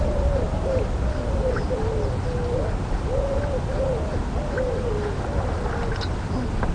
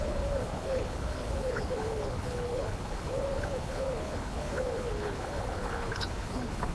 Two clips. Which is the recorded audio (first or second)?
first